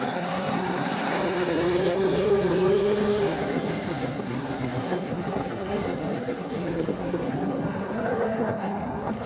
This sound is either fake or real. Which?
fake